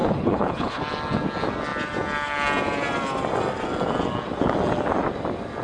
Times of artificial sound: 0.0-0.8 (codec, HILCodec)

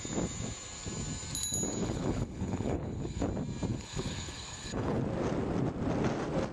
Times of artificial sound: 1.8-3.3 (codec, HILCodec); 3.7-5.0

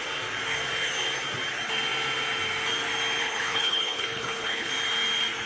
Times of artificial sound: 3.2-4.7 (codec, HILCodec)

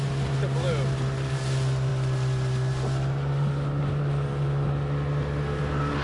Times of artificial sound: none

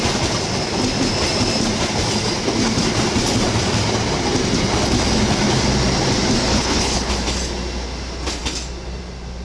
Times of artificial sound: 6.5-7.1 (codec, HILCodec)

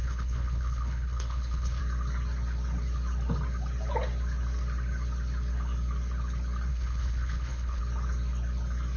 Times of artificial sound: 0.0-1.8 (codec, HILCodec); 6.7-7.8